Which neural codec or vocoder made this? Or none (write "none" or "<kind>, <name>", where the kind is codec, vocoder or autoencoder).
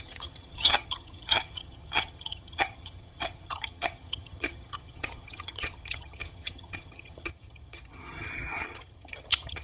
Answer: vocoder, HiFi-GAN